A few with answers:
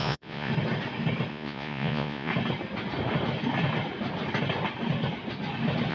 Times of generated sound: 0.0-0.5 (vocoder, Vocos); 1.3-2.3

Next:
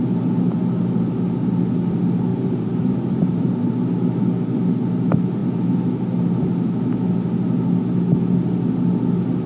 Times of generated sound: 2.3-3.7 (vocoder, BigVGAN v2)

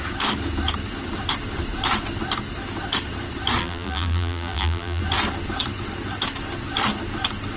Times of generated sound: 3.6-5.0 (vocoder, BigVGAN v2)

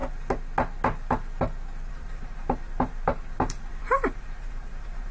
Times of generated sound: 1.9-5.1 (vocoder, BigVGAN v2)